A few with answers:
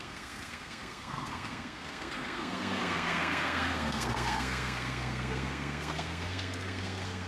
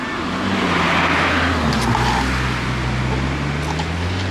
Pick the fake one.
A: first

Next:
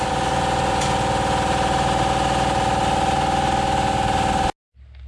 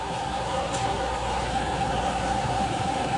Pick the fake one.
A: second